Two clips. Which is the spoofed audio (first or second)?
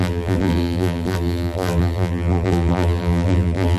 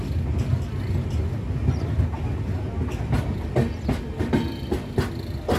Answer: first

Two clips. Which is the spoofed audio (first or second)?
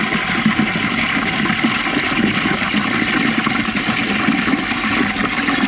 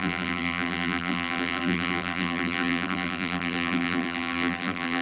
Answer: second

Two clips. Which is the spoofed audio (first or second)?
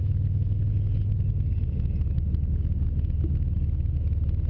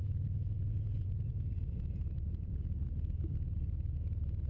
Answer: second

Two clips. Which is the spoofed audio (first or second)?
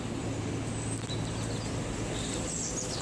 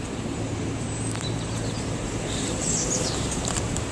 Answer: second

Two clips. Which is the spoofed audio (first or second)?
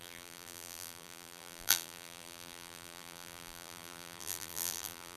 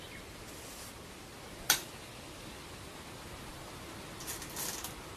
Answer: first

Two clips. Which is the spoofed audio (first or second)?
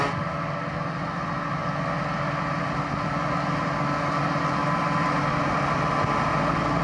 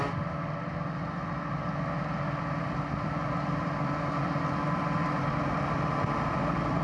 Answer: second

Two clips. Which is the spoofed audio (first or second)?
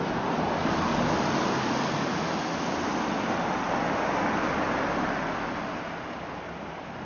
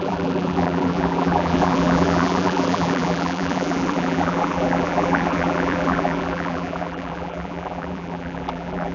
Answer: second